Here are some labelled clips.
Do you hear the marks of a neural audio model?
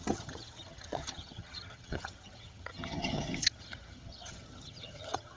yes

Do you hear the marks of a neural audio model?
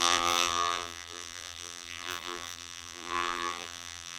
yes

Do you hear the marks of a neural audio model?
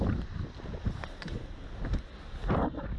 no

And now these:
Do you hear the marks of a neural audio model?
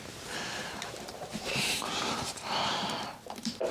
yes